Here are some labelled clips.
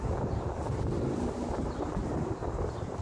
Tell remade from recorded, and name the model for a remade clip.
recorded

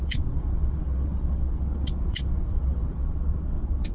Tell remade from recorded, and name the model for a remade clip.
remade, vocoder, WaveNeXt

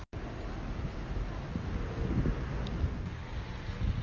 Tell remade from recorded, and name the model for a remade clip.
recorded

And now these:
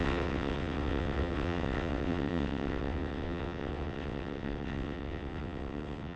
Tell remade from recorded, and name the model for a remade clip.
remade, vocoder, WaveNeXt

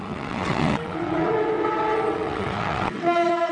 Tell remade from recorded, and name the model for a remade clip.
remade, vocoder, WaveNeXt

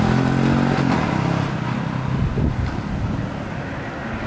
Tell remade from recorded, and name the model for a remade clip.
recorded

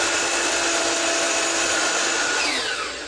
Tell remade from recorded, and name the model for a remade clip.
recorded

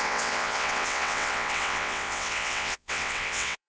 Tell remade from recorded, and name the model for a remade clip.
remade, vocoder, WaveNeXt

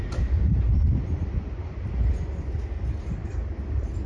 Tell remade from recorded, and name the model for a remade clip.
recorded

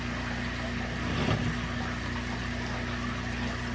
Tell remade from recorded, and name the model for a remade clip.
recorded